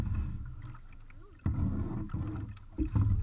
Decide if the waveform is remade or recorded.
recorded